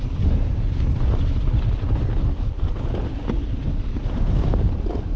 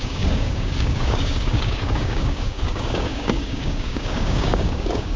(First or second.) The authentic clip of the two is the first